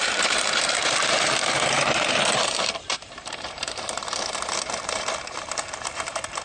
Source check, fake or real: fake